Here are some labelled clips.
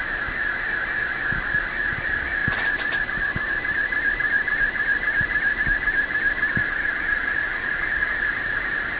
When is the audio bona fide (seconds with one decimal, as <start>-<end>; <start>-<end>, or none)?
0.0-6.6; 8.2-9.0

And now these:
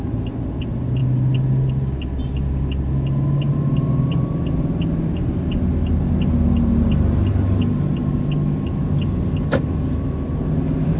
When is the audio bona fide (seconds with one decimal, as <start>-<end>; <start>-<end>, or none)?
0.0-11.0

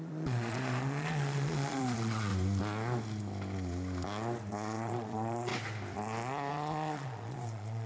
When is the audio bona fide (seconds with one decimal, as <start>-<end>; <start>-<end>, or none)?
2.3-4.5; 5.5-6.5

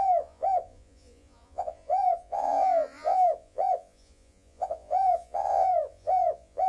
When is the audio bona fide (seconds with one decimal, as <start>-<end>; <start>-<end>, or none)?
none